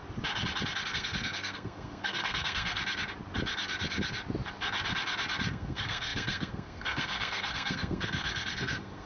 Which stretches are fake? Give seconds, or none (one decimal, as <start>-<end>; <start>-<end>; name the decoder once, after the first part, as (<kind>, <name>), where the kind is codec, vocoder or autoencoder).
0.9-2.8 (codec, SNAC); 5.5-9.1